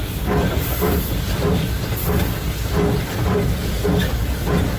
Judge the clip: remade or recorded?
recorded